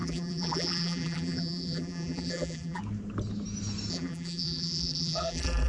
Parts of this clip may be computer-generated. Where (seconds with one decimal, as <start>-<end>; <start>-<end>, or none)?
0.0-2.8; 3.9-5.7